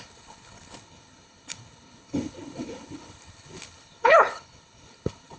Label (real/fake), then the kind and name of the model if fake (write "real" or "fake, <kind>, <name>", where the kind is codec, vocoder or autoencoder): fake, codec, HILCodec